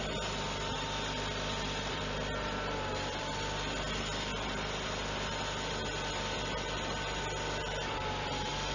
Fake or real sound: fake